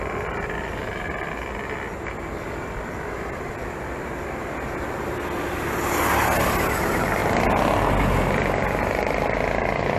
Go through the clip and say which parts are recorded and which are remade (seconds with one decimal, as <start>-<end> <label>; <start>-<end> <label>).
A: 0.0-10.0 recorded